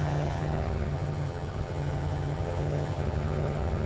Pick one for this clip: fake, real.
fake